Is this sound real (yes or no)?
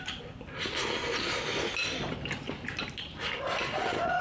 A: yes